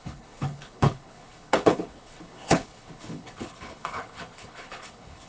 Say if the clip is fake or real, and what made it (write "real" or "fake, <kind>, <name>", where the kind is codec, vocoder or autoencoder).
fake, codec, HILCodec